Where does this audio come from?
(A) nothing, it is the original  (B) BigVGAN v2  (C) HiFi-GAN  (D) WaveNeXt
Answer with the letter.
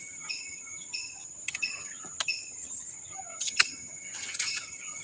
C